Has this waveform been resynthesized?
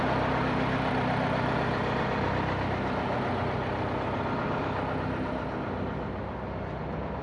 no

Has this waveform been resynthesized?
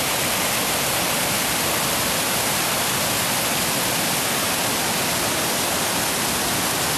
no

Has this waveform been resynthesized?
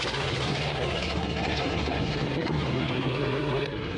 yes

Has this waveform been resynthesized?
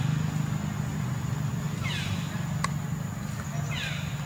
no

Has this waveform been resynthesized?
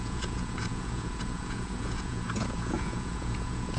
yes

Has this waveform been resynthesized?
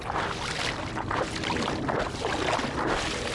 no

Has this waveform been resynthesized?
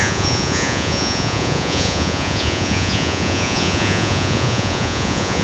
yes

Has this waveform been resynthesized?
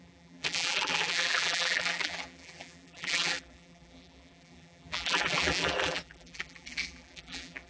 yes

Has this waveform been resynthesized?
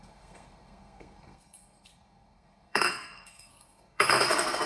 yes